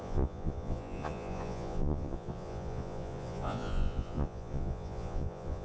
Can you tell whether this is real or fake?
fake